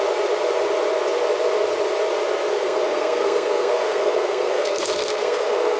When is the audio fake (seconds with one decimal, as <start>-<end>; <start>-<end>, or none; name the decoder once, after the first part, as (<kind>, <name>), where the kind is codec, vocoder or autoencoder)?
2.5-5.8 (codec, SNAC)